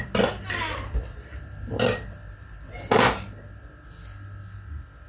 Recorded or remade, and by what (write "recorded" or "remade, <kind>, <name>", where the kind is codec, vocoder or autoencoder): recorded